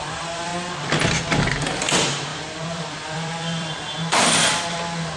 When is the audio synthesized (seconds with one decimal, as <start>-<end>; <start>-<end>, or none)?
0.0-0.5; 1.5-5.2